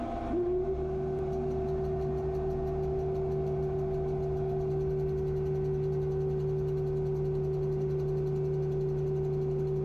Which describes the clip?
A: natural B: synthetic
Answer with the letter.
A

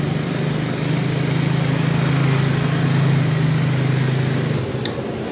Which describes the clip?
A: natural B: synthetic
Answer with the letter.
A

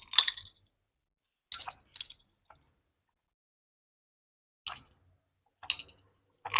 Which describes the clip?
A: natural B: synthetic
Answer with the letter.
A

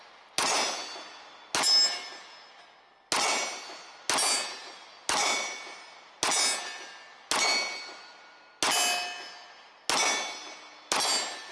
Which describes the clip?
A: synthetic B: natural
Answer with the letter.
B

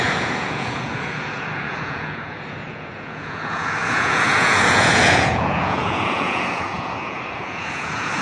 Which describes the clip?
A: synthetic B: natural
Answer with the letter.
A